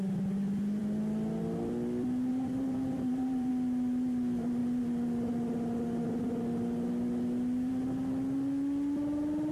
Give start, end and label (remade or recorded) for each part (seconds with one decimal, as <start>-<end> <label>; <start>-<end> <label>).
0.0-2.3 recorded; 2.3-3.5 remade; 3.5-9.5 recorded